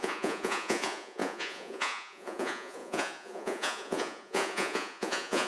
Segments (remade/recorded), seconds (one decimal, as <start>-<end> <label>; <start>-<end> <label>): 0.0-5.5 remade